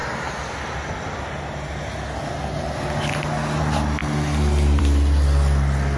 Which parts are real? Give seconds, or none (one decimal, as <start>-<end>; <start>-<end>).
0.0-6.0